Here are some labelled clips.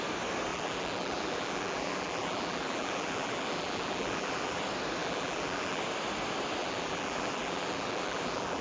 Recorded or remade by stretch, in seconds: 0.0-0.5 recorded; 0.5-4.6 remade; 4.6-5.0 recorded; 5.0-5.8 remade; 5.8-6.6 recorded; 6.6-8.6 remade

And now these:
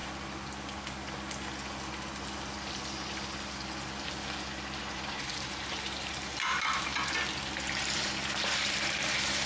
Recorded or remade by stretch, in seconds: 0.0-4.8 recorded; 4.8-6.9 remade; 6.9-7.7 recorded; 7.7-9.5 remade

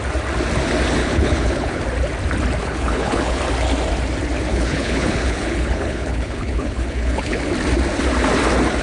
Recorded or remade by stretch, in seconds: 0.0-1.0 recorded; 1.0-1.8 remade; 1.8-2.6 recorded; 2.6-3.4 remade; 3.4-4.5 recorded; 4.5-7.5 remade; 7.5-8.8 recorded

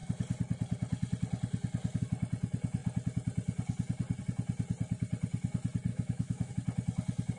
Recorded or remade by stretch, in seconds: 0.0-5.9 recorded; 5.9-6.5 remade; 6.5-7.4 recorded

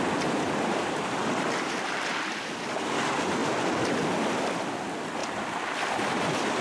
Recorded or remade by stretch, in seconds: 0.0-3.4 remade; 3.4-4.2 recorded; 4.2-5.2 remade; 5.2-5.9 recorded; 5.9-6.6 remade